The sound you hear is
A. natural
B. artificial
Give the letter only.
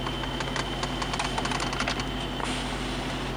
A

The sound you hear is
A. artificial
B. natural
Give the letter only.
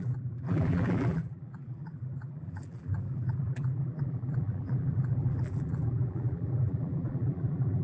A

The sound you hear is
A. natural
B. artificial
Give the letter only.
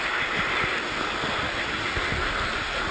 A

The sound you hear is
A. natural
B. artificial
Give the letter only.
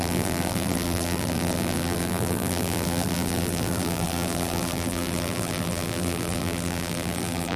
B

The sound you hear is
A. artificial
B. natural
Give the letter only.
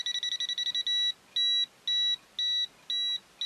B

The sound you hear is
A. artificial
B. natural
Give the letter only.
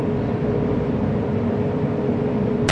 A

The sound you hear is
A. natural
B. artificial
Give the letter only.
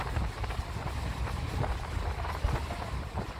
A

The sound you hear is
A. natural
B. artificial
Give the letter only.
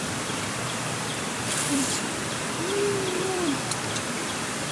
B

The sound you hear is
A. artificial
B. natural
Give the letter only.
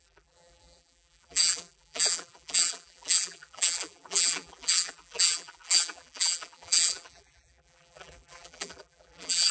A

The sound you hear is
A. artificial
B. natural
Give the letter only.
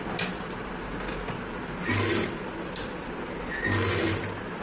B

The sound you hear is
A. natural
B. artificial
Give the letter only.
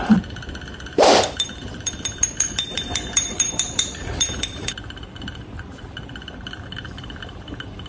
B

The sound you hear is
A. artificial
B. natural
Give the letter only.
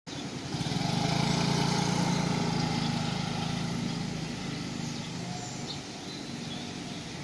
B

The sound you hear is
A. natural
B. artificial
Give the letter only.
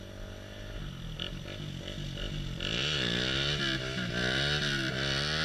A